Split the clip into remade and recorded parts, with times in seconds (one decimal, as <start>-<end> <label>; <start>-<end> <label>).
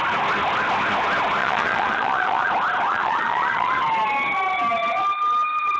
0.0-1.4 recorded; 1.4-2.5 remade; 2.5-2.9 recorded; 2.9-3.8 remade; 3.8-5.8 recorded